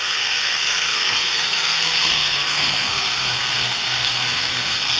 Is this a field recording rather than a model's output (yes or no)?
no